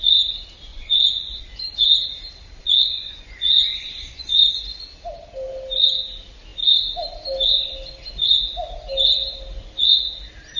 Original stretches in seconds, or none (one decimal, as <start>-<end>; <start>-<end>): 0.0-0.7; 1.4-2.6; 4.4-10.6